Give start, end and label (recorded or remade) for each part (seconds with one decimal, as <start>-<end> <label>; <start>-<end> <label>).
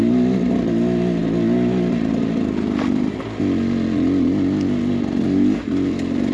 0.0-6.3 recorded